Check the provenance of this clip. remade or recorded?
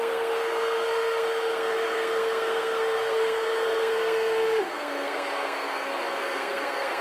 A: remade